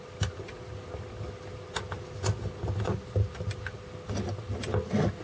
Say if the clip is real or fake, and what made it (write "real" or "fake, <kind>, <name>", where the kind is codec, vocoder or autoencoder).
real